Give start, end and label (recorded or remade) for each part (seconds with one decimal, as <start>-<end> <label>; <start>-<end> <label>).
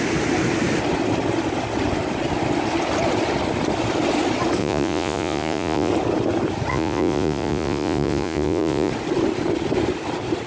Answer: 0.0-4.6 recorded; 4.6-5.9 remade; 5.9-6.7 recorded; 6.7-8.9 remade; 8.9-10.5 recorded